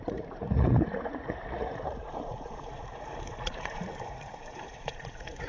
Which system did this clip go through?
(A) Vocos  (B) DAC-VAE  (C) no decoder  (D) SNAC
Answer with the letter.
A